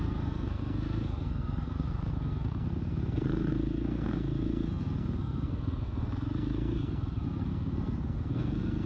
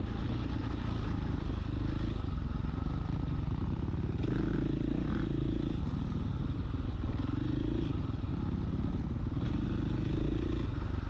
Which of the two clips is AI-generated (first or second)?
first